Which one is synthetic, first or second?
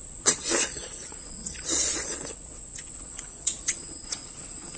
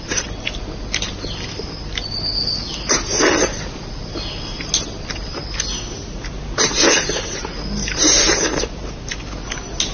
first